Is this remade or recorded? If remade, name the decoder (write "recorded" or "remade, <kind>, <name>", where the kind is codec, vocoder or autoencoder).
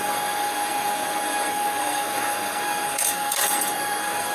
remade, codec, SNAC